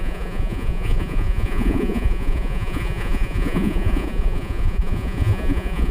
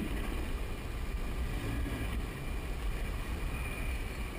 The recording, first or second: second